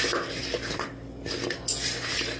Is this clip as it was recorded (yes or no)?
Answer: yes